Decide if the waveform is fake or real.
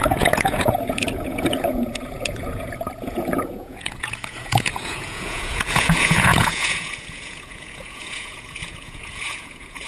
fake